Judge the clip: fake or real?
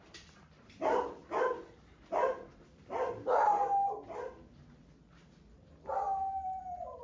real